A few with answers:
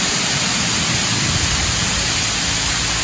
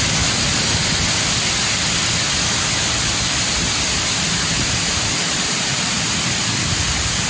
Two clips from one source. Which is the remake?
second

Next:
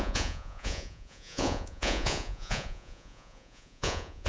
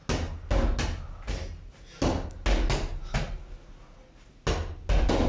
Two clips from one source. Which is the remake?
first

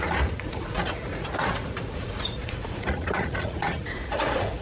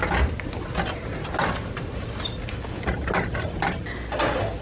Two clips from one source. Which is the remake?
first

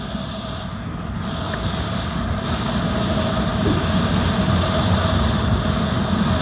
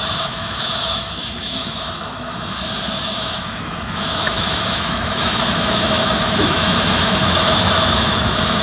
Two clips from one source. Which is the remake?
second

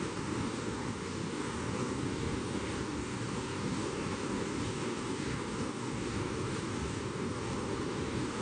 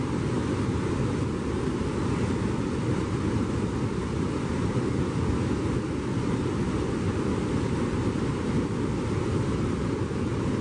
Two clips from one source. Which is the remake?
first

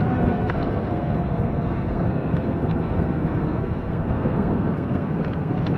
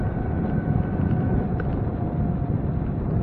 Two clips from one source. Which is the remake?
first